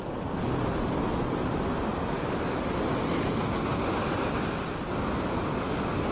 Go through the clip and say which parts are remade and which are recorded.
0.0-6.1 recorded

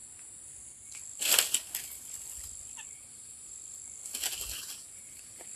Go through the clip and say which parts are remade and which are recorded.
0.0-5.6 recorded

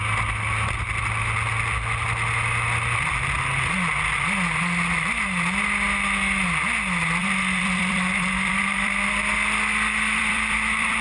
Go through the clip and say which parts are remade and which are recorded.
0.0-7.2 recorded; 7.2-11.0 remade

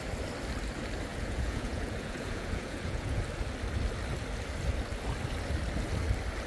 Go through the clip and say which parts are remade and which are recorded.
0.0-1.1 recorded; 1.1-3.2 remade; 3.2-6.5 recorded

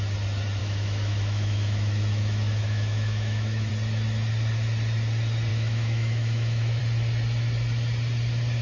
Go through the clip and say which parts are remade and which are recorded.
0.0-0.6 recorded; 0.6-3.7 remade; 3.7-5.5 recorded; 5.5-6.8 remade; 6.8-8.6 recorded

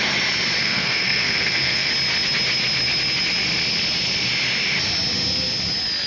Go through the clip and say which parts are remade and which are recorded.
0.0-0.6 recorded; 0.6-1.9 remade; 1.9-6.1 recorded